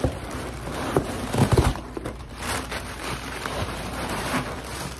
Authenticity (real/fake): fake